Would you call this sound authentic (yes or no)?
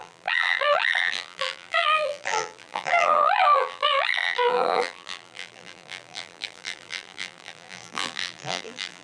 no